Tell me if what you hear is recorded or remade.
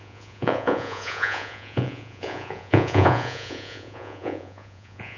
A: remade